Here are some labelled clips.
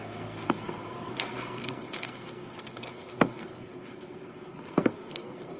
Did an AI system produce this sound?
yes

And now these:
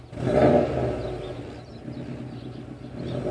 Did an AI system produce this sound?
no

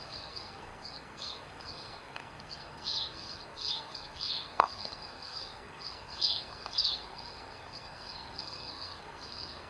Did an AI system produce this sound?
yes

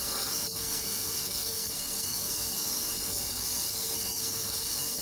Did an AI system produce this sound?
yes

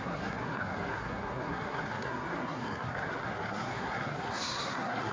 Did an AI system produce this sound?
yes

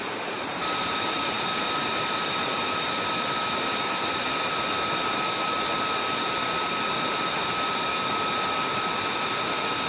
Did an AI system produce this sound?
no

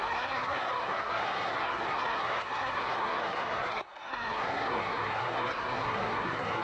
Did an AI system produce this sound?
yes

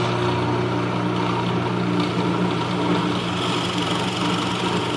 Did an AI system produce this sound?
no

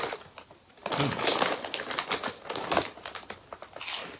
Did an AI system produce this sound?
no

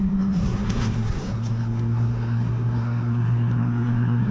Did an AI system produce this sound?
yes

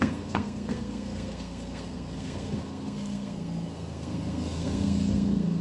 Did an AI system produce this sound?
yes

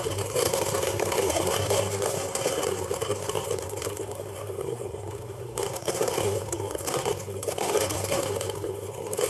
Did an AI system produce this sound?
yes